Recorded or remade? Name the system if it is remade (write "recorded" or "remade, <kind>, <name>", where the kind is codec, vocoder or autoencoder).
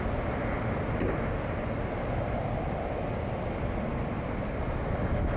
recorded